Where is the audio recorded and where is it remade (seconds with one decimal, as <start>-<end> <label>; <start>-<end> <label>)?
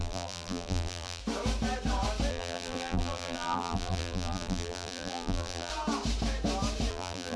0.0-1.2 remade; 1.2-2.3 recorded; 2.3-5.7 remade; 5.7-6.9 recorded; 6.9-7.4 remade